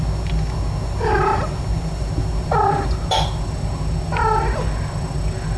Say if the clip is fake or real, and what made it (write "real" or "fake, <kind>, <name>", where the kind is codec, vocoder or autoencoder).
real